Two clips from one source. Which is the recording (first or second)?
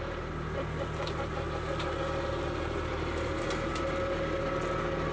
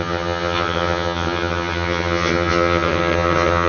first